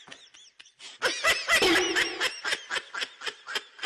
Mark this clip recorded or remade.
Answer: recorded